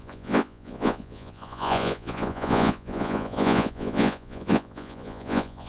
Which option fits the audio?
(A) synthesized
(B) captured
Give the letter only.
A